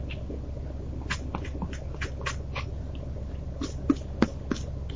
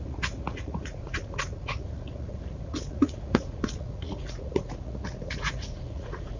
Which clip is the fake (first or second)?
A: second